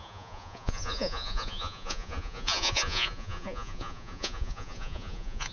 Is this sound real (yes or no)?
no